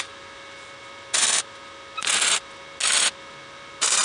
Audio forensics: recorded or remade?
recorded